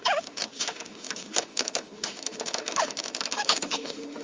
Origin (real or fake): fake